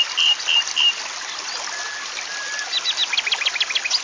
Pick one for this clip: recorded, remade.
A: recorded